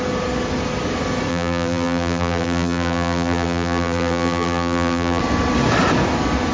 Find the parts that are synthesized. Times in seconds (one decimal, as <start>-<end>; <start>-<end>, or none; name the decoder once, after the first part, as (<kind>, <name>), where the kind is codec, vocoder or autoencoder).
1.3-5.2 (vocoder, BigVGAN v2)